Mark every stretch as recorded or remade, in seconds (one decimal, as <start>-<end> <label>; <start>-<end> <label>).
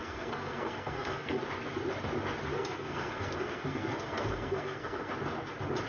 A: 0.0-1.4 remade; 1.4-2.5 recorded; 2.5-5.1 remade; 5.1-5.9 recorded